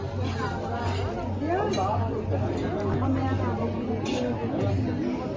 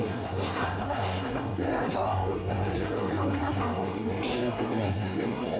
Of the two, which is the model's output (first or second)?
second